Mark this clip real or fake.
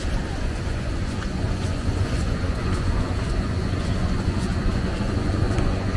fake